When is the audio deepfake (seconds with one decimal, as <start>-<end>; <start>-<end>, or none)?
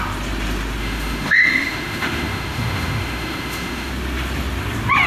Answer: 0.8-3.9